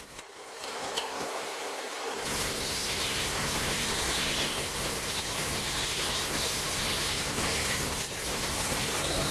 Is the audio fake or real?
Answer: fake